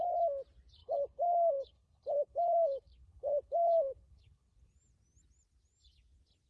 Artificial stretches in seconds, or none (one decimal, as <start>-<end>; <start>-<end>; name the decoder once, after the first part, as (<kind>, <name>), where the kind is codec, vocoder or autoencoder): 0.8-4.7 (codec, HILCodec)